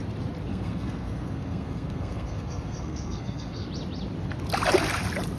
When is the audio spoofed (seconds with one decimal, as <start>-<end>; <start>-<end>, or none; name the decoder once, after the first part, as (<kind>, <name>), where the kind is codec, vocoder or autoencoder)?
0.5-3.7 (codec, SNAC)